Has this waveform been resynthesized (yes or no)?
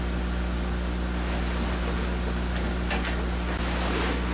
no